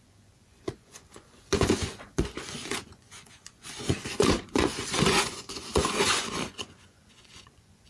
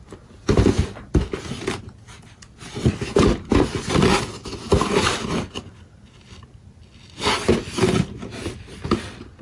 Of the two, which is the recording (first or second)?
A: second